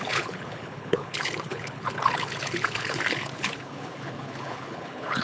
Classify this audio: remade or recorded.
remade